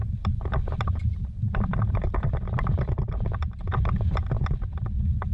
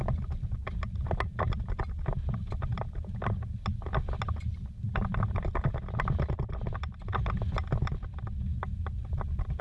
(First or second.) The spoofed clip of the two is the first